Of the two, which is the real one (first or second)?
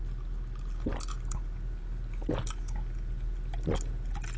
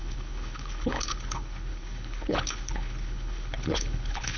first